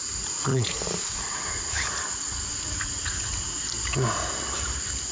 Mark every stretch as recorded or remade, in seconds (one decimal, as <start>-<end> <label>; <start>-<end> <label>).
0.0-0.5 recorded; 0.5-3.6 remade; 3.6-5.1 recorded